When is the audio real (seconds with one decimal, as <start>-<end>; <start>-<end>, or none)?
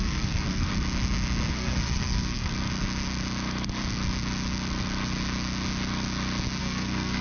0.7-1.5; 2.5-6.6